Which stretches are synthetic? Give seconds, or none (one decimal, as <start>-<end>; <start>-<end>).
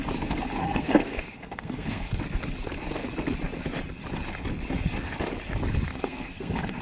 0.6-2.2; 5.9-6.8